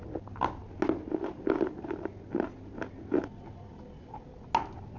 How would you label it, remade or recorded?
recorded